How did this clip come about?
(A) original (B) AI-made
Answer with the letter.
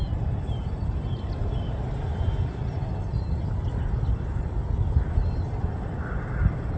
A